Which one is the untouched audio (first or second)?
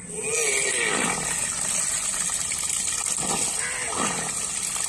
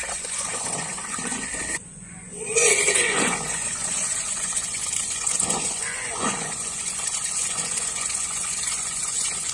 first